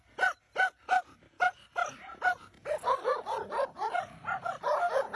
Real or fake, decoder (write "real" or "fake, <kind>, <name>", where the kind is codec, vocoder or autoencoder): real